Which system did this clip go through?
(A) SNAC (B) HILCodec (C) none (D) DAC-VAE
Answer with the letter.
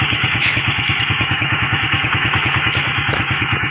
D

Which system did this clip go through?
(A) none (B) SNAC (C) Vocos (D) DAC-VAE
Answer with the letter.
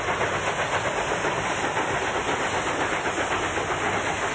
A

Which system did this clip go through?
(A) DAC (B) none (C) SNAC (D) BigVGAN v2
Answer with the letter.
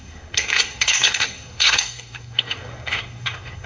C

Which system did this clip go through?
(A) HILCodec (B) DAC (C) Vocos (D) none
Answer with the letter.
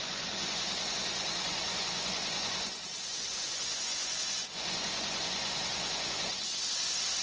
C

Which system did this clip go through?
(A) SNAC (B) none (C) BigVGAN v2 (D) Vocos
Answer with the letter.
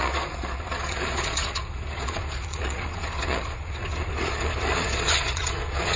D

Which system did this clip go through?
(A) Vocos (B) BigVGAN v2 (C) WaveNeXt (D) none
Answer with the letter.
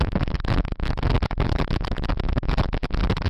B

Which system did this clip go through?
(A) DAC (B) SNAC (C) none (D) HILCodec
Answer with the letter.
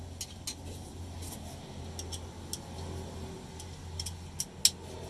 C